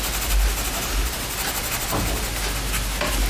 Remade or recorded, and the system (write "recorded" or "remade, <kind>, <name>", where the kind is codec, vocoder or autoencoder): recorded